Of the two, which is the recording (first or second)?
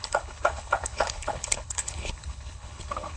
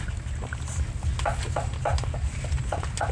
second